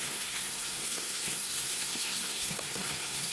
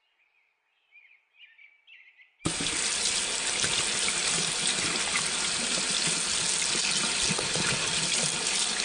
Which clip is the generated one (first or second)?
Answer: first